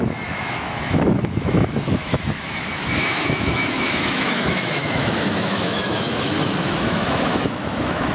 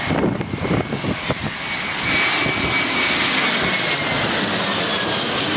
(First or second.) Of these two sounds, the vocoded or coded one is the first